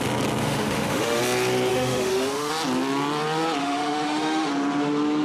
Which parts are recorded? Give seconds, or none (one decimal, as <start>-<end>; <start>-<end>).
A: 0.0-0.4; 1.2-1.7; 2.5-3.6; 4.5-5.2